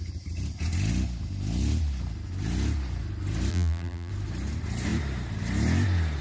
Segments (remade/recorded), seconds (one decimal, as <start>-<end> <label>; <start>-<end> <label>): 0.0-3.5 recorded; 3.5-4.1 remade; 4.1-6.2 recorded